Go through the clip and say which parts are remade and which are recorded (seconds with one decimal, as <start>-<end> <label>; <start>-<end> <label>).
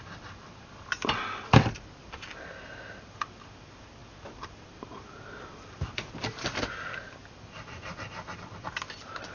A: 0.0-9.3 recorded